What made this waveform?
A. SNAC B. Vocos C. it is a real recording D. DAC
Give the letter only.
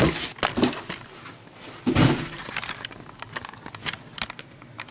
C